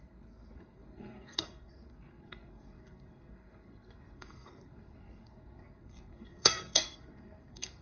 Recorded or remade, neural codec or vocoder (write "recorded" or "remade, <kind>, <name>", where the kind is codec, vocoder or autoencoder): remade, codec, SNAC